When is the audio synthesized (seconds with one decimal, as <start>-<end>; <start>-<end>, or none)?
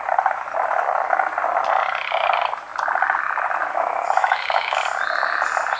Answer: 3.6-4.8